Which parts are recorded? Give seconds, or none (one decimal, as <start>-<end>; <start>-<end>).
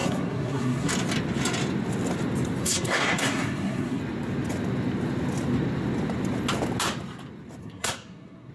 0.9-2.6; 4.0-7.6